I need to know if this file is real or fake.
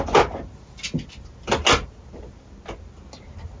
real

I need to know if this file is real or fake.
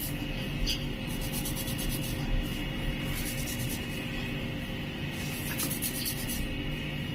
real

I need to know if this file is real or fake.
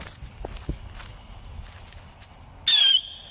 real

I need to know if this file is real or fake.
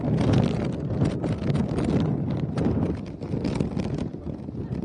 real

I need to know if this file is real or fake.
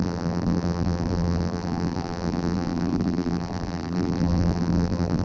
fake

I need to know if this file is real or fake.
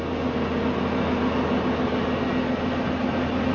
real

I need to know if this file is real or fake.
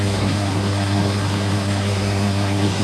fake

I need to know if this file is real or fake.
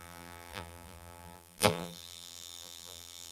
fake